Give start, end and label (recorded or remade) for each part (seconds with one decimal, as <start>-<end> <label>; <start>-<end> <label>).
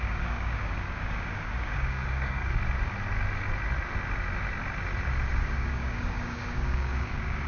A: 0.0-2.4 remade; 2.4-5.4 recorded; 5.4-7.5 remade